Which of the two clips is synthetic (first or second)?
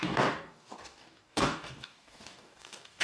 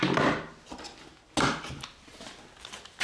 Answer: first